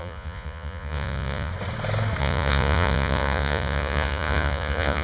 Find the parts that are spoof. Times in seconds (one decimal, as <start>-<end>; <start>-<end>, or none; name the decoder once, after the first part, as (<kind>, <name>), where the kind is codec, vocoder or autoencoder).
0.0-1.5 (vocoder, Vocos); 2.2-5.0